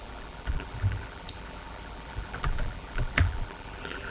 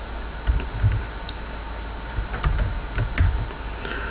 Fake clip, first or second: first